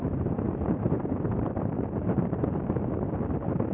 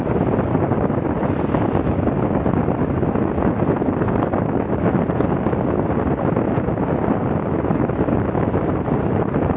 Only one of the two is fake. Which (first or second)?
first